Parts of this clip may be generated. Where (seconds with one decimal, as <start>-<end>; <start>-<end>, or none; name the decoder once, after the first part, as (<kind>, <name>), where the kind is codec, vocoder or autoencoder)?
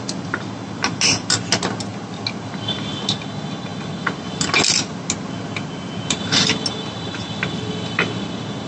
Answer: none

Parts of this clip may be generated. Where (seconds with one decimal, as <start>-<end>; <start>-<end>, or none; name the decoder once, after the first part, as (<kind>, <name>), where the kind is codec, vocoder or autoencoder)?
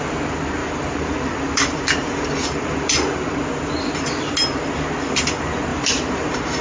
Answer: 0.6-3.4 (vocoder, BigVGAN v2); 5.7-6.6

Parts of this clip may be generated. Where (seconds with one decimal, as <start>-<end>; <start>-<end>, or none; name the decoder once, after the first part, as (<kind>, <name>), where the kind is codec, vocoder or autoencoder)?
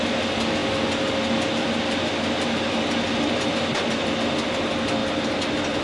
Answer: none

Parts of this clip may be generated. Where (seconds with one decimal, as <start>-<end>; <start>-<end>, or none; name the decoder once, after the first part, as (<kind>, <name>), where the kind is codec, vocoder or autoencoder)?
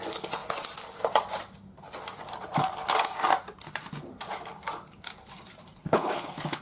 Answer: 5.8-6.6 (codec, HILCodec)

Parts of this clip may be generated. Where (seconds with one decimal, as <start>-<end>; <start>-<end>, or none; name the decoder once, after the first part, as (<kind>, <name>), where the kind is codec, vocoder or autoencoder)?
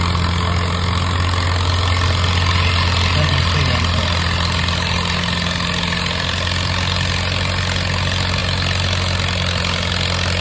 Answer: none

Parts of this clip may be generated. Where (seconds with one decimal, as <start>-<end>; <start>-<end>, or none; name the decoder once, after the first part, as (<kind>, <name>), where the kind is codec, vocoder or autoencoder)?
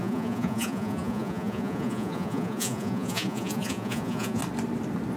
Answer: 0.0-4.4 (vocoder, Vocos)